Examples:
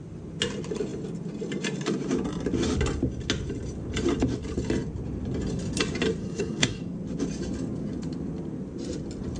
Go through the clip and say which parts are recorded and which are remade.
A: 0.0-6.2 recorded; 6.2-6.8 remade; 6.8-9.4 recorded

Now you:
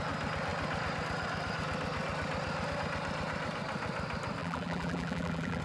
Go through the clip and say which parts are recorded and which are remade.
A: 0.0-4.4 recorded; 4.4-5.6 remade

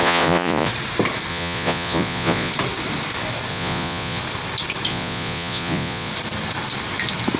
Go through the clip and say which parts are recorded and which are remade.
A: 0.0-0.7 remade; 0.7-1.3 recorded; 1.3-2.5 remade; 2.5-3.5 recorded; 3.5-4.2 remade; 4.2-4.9 recorded; 4.9-6.1 remade; 6.1-7.4 recorded

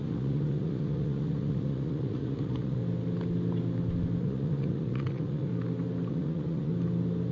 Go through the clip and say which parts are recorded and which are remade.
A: 0.0-2.8 remade; 2.8-4.2 recorded; 4.2-5.5 remade; 5.5-6.1 recorded; 6.1-6.7 remade; 6.7-7.3 recorded

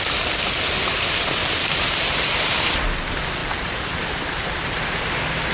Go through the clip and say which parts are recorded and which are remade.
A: 0.0-1.4 recorded; 1.4-2.7 remade; 2.7-3.4 recorded; 3.4-5.1 remade; 5.1-5.5 recorded